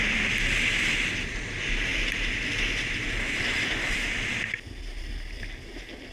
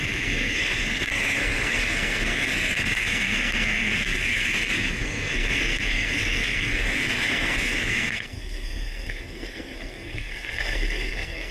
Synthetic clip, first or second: second